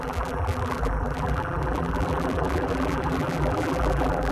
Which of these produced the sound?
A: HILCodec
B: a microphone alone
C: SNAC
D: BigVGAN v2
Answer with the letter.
D